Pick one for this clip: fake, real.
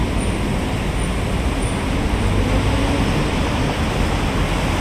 real